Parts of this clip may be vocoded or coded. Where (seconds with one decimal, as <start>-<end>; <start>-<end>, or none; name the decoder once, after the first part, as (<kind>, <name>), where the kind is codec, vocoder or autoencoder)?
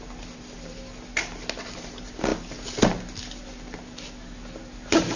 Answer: none